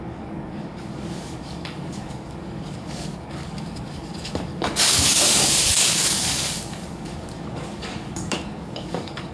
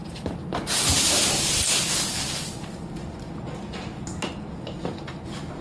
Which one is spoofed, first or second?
first